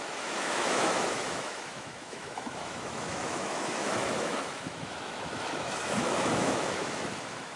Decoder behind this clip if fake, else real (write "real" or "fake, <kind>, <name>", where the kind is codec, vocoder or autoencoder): fake, autoencoder, DAC-VAE